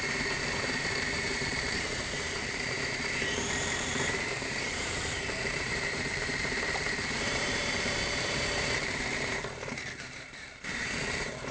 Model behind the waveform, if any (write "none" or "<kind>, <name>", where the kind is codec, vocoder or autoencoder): vocoder, BigVGAN v2